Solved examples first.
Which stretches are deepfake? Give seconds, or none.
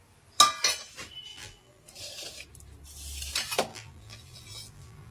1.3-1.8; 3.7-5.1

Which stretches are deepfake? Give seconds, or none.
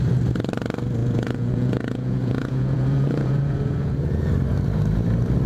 1.0-4.3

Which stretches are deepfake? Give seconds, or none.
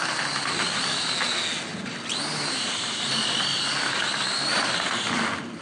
1.7-3.1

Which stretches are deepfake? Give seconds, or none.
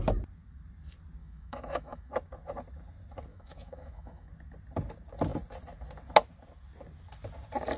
1.2-2.1; 3.3-4.3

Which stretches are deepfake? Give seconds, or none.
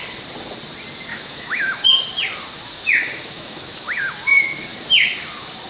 1.1-1.9; 3.0-4.0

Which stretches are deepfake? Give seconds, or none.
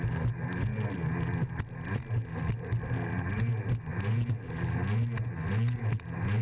none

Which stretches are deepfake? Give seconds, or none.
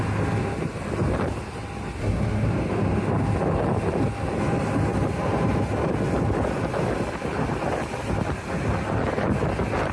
2.0-2.5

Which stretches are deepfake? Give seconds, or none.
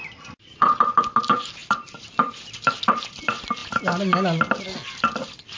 none